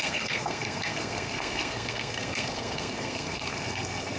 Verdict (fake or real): fake